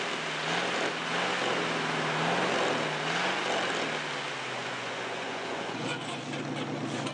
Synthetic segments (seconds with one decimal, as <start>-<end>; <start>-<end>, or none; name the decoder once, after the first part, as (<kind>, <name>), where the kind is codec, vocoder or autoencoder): 4.6-6.2 (vocoder, Vocos)